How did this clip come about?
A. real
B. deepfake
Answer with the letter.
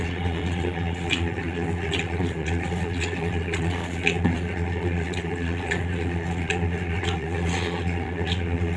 B